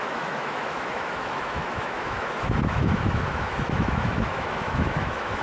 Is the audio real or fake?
fake